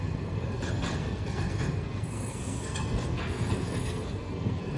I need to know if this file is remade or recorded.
remade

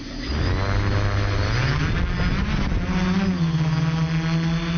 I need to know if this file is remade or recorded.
recorded